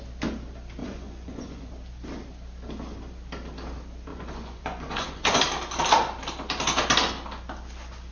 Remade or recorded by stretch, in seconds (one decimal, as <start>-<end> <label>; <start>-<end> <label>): 0.0-0.8 recorded; 0.8-1.7 remade; 1.7-4.1 recorded; 4.1-5.4 remade; 5.4-8.1 recorded